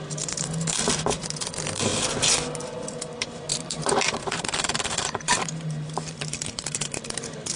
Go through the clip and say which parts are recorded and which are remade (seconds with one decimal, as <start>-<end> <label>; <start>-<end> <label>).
0.0-3.5 recorded; 3.5-7.6 remade